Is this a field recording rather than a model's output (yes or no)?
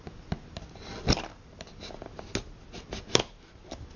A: yes